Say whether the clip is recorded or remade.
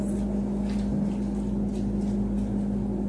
recorded